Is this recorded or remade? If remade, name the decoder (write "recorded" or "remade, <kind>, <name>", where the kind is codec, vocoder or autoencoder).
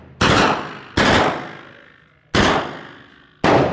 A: recorded